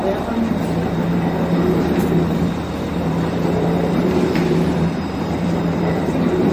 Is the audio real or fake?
fake